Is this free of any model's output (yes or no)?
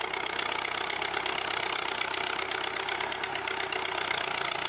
no